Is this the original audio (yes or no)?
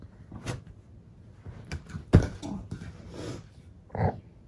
yes